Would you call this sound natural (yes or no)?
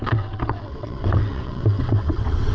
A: no